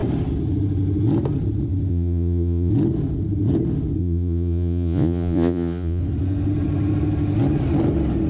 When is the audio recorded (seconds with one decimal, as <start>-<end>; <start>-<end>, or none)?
0.0-1.9; 2.7-4.0; 6.0-8.3